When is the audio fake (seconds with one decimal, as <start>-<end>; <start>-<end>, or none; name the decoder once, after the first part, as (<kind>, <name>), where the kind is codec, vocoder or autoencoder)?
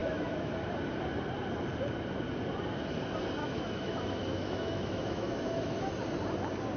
0.0-0.5 (autoencoder, DAC-VAE); 3.4-5.9